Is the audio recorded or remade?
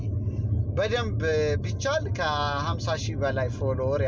recorded